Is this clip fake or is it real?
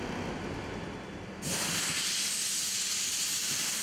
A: real